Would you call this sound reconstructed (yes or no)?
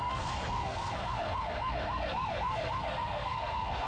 yes